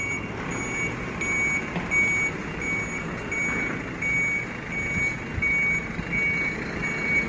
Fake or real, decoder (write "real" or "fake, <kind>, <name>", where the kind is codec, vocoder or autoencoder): real